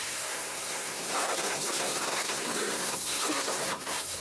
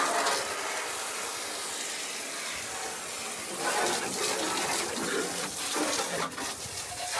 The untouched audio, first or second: second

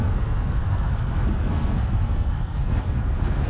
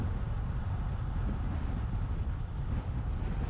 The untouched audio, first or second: second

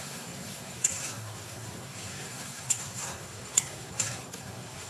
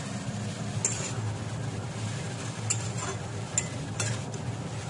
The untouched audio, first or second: second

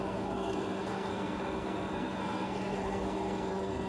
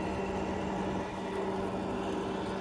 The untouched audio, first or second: second